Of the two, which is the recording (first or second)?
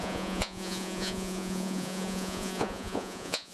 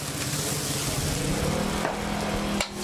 second